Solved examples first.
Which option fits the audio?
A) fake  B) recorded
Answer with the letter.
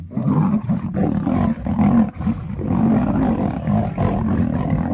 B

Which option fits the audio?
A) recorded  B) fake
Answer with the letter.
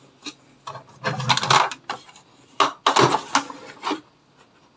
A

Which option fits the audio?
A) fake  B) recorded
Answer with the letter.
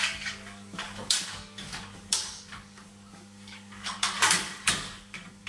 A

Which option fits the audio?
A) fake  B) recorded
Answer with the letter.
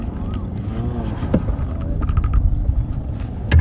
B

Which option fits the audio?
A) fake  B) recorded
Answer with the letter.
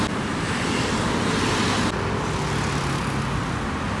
B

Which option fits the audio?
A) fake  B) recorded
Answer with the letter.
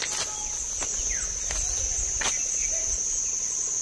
B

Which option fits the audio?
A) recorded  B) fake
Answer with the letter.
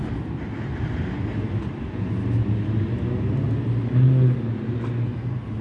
A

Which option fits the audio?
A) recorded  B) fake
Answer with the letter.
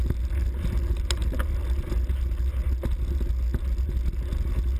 A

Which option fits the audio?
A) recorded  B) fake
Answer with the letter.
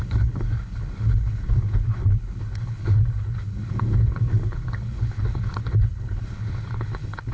B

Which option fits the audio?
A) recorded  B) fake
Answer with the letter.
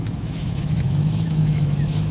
B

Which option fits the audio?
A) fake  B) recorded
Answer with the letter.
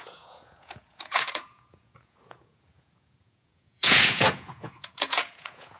A